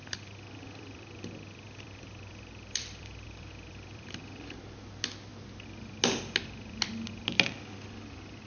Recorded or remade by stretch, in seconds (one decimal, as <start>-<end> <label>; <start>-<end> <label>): 0.0-4.2 remade; 4.2-8.5 recorded

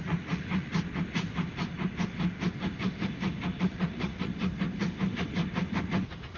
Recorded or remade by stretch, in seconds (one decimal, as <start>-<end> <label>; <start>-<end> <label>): 0.0-0.7 remade; 0.7-3.6 recorded; 3.6-4.3 remade; 4.3-6.4 recorded